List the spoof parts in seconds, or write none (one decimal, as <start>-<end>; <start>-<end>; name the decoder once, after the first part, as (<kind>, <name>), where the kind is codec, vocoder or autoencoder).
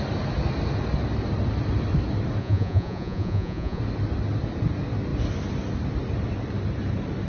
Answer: 2.4-3.8 (vocoder, Vocos)